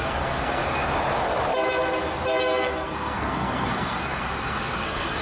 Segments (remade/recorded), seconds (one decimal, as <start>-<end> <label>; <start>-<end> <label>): 0.0-0.6 remade; 0.6-2.4 recorded; 2.4-5.2 remade